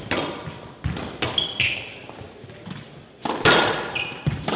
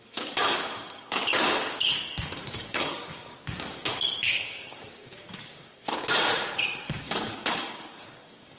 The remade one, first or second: second